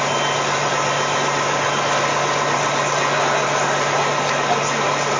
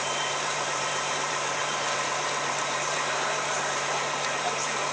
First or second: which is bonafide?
first